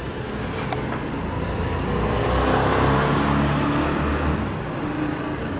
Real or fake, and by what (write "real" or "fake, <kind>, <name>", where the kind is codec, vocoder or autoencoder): real